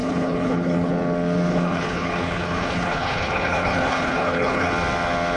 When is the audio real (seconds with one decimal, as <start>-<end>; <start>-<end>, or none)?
0.9-1.5; 4.7-5.4